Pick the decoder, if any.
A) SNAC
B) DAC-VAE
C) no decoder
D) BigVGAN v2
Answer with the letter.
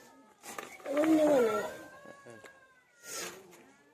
C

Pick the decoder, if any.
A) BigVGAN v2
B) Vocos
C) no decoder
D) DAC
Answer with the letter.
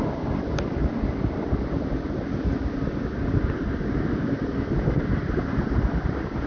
C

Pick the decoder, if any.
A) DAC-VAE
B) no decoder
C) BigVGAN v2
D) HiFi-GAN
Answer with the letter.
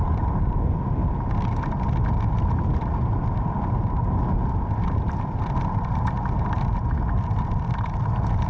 B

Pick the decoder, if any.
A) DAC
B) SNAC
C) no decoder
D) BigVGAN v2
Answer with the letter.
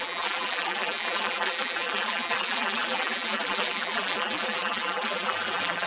D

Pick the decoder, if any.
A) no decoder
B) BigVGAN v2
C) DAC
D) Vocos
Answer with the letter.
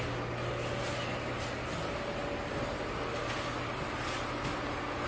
A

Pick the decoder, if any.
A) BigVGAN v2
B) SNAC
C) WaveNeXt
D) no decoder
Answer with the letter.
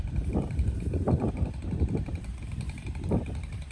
A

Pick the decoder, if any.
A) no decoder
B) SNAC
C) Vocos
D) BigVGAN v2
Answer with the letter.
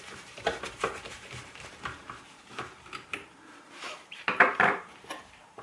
D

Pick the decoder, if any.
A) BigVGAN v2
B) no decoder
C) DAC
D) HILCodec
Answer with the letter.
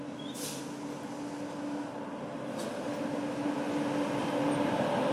B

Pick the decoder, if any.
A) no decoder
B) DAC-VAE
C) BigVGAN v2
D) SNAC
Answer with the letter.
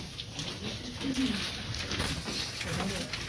A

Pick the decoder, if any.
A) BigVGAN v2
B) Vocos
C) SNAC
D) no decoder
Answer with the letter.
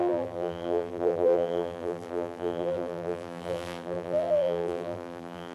A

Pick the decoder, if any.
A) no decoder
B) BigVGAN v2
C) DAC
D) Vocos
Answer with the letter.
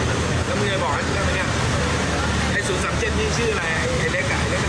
A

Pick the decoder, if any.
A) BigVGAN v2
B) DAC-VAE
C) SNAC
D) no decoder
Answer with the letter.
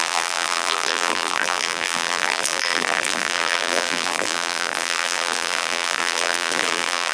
A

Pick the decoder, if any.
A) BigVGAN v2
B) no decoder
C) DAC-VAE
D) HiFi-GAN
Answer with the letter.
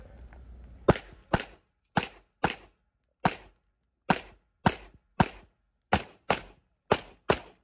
B